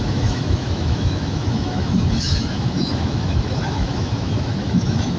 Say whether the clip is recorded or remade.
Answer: remade